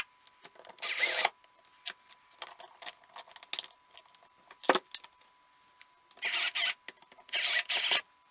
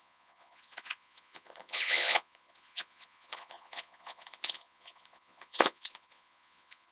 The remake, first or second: second